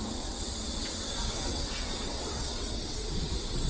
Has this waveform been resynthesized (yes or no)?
yes